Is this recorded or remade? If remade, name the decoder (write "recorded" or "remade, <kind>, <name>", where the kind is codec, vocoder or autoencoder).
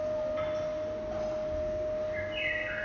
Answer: recorded